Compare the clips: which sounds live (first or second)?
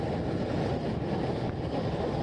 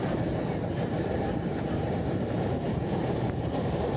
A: first